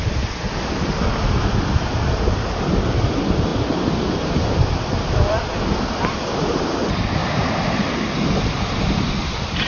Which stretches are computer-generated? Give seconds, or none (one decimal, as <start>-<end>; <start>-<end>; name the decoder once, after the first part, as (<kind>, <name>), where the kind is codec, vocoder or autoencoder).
7.2-7.8 (vocoder, BigVGAN v2)